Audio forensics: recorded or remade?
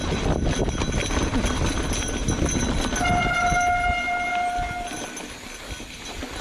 recorded